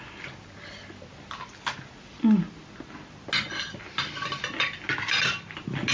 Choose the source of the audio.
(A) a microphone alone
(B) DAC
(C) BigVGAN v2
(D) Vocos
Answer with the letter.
A